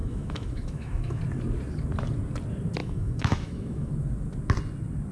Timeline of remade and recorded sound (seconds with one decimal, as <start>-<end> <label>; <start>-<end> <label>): 0.0-1.2 remade; 1.2-2.8 recorded; 2.8-3.9 remade; 3.9-5.1 recorded